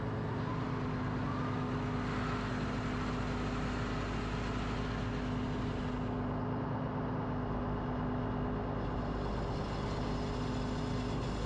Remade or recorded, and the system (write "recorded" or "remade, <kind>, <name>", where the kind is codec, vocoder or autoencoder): recorded